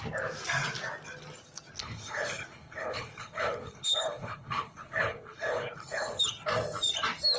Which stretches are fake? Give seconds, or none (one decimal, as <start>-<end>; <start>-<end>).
1.8-6.2